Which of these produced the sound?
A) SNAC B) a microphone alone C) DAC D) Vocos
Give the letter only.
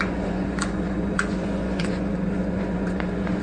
D